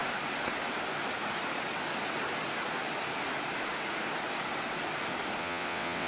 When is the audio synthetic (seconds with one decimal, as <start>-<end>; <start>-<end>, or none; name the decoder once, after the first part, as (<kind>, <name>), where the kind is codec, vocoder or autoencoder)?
5.4-6.1 (vocoder, WaveNeXt)